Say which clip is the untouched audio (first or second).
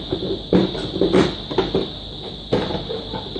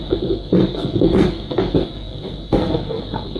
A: first